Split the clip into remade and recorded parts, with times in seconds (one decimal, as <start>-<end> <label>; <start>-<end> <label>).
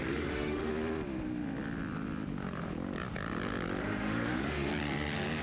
0.0-0.7 remade; 0.7-3.8 recorded; 3.8-4.7 remade; 4.7-5.4 recorded